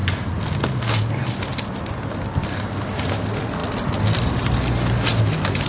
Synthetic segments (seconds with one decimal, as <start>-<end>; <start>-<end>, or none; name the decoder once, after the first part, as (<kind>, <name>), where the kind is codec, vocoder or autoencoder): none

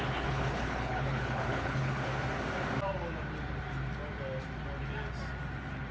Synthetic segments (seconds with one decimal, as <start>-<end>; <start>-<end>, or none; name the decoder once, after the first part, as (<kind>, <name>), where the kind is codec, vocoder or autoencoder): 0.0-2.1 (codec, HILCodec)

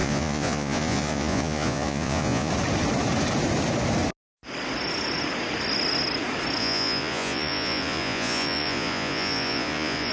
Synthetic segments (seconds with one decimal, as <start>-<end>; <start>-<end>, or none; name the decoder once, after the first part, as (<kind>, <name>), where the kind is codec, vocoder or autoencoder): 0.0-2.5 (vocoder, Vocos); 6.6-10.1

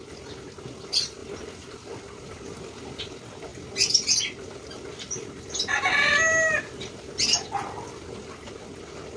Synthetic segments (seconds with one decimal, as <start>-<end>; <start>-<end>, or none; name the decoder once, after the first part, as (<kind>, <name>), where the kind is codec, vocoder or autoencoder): none

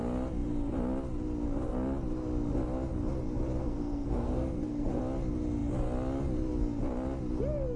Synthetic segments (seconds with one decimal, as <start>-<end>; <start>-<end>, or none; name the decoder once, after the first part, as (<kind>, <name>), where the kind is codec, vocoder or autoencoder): 3.6-5.0 (codec, SNAC)

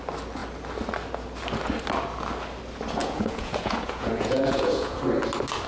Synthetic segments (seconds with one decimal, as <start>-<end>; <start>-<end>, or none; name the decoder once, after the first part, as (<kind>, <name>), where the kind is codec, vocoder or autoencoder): 3.0-5.0 (vocoder, Vocos)

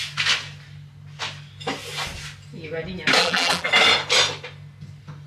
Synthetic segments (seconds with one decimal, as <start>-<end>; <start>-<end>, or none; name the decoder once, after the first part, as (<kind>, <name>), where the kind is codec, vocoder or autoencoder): 3.2-3.7 (vocoder, BigVGAN v2)

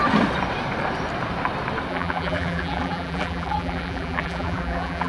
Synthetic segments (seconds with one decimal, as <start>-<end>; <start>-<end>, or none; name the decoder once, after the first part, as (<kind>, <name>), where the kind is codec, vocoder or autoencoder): 1.9-5.1 (vocoder, BigVGAN v2)